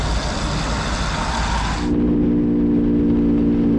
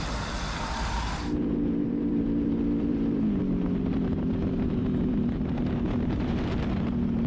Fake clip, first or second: second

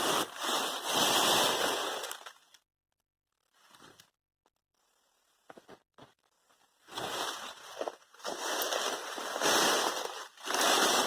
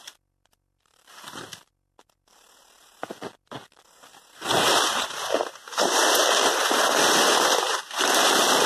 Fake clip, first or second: second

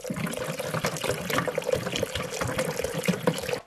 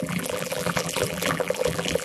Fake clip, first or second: second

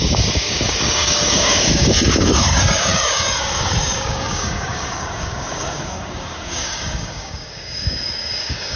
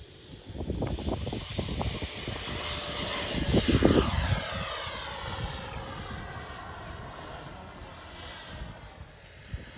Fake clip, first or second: first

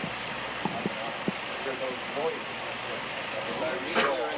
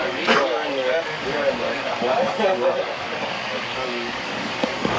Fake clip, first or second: second